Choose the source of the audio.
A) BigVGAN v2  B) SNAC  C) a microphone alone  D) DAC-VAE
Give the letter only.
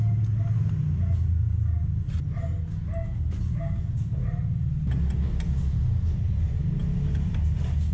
C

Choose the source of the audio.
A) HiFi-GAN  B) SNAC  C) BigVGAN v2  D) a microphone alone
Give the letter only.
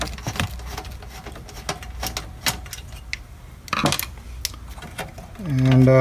D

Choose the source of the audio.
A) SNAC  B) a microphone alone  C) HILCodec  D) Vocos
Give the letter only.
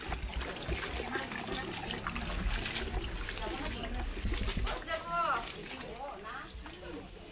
B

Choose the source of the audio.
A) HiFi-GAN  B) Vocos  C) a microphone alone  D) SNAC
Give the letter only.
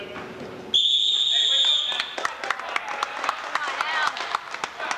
C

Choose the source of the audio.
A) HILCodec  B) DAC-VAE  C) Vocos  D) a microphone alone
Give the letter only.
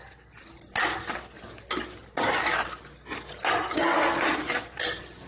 D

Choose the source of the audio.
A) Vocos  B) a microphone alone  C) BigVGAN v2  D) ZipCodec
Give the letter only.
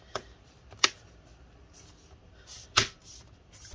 C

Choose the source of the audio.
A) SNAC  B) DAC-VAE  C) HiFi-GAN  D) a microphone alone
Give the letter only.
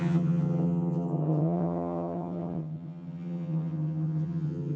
C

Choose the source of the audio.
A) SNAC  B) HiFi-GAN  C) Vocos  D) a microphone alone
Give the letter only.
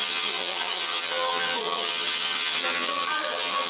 B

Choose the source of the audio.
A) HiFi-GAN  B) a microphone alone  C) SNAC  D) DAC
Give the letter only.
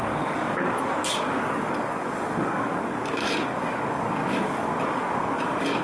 D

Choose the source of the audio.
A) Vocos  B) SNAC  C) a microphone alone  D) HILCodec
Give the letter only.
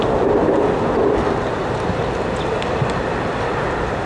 C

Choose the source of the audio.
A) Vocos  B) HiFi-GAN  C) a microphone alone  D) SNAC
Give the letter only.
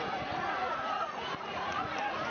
A